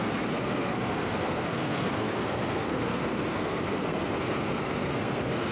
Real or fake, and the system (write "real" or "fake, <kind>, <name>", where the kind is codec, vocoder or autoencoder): fake, codec, SNAC